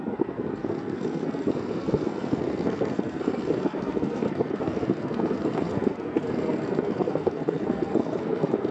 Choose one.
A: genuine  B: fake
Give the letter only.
B